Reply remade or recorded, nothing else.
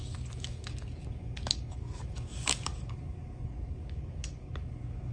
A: remade